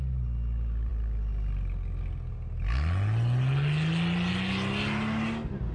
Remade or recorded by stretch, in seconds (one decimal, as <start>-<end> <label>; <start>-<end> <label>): 0.0-5.7 recorded